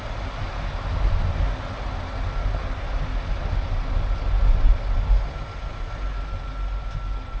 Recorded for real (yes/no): yes